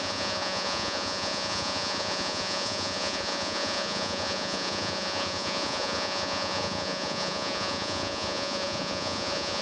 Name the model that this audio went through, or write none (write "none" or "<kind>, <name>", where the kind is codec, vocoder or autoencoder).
vocoder, Vocos